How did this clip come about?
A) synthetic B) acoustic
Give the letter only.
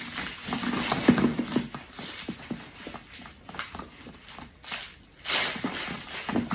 B